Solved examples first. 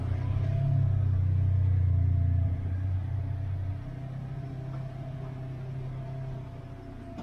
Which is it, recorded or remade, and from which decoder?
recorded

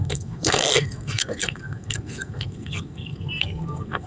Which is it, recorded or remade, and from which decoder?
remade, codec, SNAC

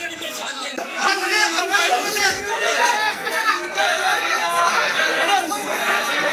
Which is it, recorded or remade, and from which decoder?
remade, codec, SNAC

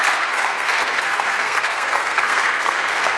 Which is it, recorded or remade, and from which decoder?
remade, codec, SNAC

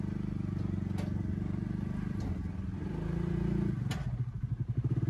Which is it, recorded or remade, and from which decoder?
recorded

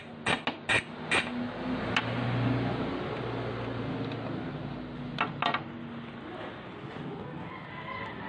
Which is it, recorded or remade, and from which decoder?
recorded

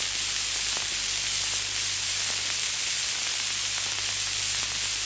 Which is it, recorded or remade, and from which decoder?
recorded